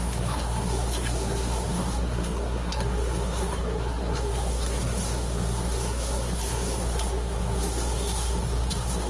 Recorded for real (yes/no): no